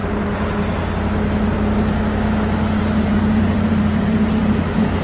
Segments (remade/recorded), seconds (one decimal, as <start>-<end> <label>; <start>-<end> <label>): 0.0-3.0 recorded; 3.0-5.0 remade

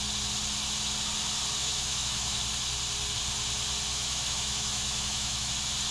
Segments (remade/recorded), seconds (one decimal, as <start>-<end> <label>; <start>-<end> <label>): 0.0-1.6 recorded; 1.6-2.4 remade; 2.4-3.9 recorded; 3.9-5.5 remade; 5.5-5.9 recorded

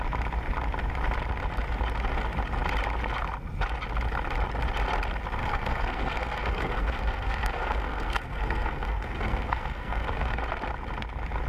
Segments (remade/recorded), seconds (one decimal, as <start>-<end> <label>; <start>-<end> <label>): 0.0-5.4 recorded; 5.4-10.4 remade; 10.4-11.5 recorded

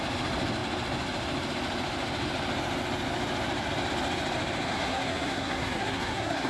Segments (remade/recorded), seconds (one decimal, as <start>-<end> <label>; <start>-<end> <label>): 0.0-4.7 recorded; 4.7-6.5 remade

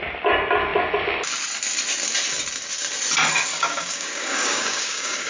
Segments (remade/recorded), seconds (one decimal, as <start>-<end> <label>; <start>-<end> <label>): 0.0-3.5 recorded; 3.5-5.3 remade

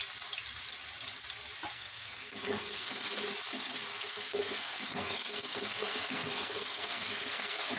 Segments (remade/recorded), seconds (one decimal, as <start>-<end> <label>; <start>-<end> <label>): 0.0-1.7 recorded; 1.7-3.1 remade; 3.1-3.9 recorded; 3.9-7.8 remade